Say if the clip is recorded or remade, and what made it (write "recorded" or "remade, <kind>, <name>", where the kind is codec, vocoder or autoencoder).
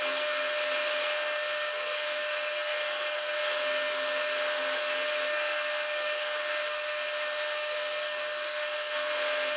remade, codec, SNAC